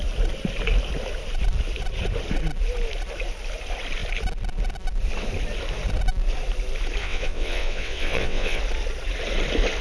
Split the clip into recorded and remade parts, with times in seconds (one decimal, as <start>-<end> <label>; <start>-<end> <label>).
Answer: 0.0-7.0 recorded; 7.0-8.6 remade; 8.6-9.8 recorded